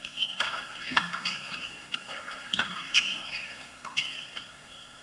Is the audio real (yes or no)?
no